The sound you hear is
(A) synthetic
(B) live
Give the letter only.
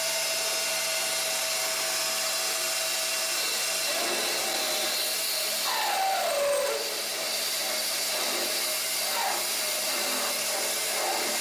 B